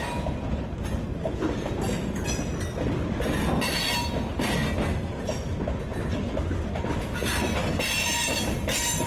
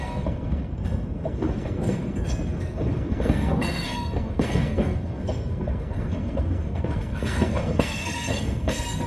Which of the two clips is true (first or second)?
first